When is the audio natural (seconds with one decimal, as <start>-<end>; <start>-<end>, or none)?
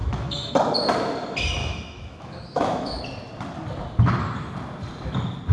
0.5-1.6; 3.0-5.5